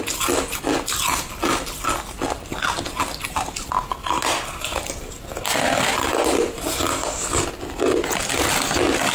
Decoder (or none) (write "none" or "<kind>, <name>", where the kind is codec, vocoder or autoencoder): none